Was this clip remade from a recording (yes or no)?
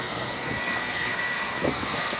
yes